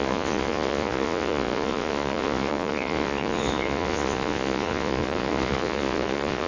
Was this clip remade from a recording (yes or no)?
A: yes